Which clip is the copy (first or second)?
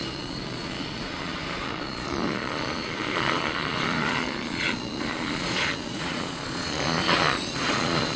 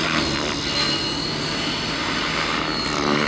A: first